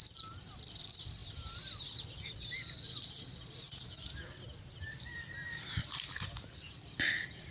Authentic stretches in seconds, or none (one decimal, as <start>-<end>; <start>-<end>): none